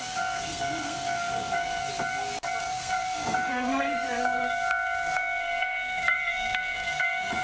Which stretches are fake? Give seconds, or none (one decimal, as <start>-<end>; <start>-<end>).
0.0-1.8; 2.6-7.4

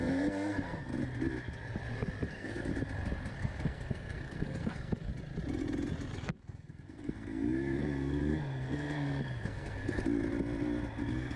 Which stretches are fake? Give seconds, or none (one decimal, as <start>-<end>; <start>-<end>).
0.0-0.9; 2.3-2.7; 3.3-5.1; 6.1-10.0; 11.0-11.4

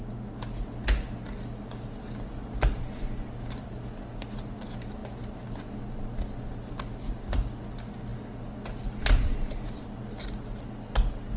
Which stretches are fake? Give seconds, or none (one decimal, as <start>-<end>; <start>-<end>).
none

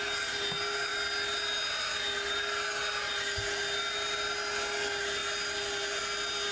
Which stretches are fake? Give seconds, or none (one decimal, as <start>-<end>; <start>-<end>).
none

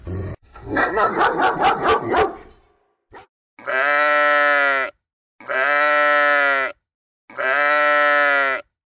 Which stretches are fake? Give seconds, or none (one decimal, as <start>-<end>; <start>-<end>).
0.4-1.1